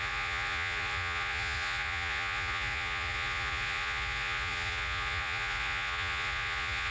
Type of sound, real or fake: fake